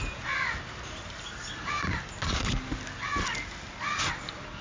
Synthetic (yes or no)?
no